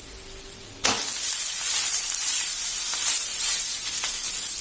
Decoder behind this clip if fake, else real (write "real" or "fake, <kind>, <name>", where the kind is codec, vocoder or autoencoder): real